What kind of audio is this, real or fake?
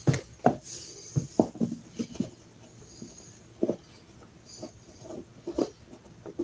real